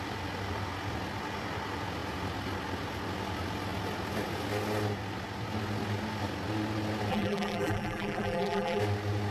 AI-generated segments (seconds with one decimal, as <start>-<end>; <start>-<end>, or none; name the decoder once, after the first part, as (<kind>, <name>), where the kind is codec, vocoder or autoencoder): 7.1-8.8 (vocoder, BigVGAN v2)